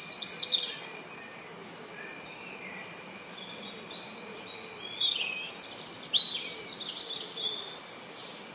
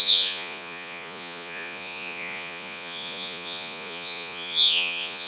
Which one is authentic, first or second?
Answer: first